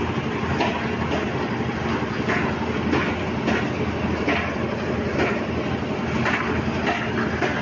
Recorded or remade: recorded